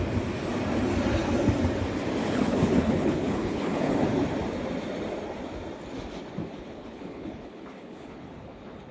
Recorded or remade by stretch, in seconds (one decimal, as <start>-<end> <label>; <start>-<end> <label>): 0.0-2.2 recorded; 2.2-3.9 remade; 3.9-6.4 recorded; 6.4-8.9 remade